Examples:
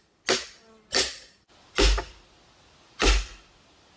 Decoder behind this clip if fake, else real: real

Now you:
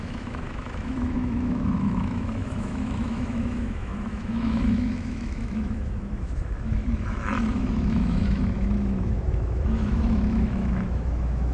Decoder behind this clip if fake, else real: fake, autoencoder, DAC-VAE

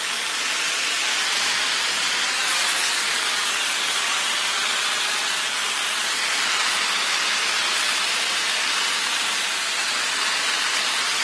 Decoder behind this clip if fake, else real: real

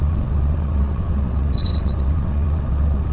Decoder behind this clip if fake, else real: fake, vocoder, WaveNeXt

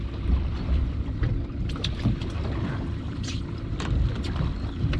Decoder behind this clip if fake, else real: fake, vocoder, BigVGAN v2